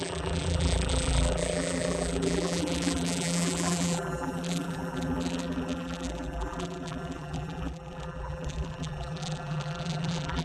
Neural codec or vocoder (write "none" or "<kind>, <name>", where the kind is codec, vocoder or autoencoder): vocoder, BigVGAN v2